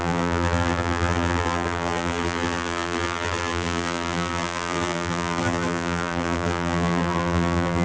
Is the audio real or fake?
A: fake